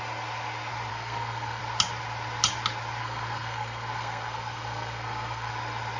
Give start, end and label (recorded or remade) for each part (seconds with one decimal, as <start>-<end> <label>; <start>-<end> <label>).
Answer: 0.0-0.9 recorded; 0.9-1.6 remade; 1.6-3.0 recorded; 3.0-5.5 remade; 5.5-6.0 recorded